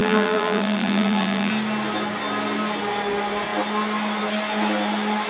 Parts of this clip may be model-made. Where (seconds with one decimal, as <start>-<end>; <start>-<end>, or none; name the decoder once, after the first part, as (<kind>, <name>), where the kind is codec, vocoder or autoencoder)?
0.0-1.5 (vocoder, BigVGAN v2)